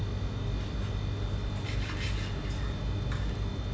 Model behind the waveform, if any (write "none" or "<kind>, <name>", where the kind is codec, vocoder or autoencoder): none